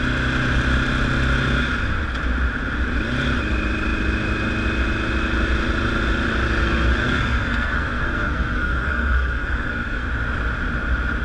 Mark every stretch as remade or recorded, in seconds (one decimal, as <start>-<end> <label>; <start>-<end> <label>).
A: 0.0-6.6 recorded; 6.6-10.1 remade; 10.1-11.2 recorded